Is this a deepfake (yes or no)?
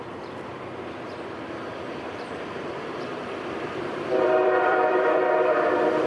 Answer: yes